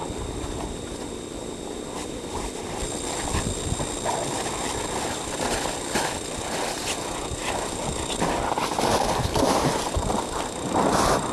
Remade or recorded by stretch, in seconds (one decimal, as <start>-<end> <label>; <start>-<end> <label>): 0.0-2.1 recorded; 2.1-7.4 remade; 7.4-9.4 recorded; 9.4-11.3 remade